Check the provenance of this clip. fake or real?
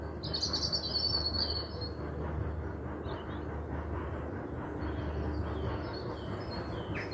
real